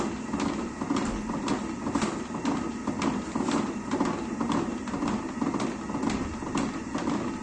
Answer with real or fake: real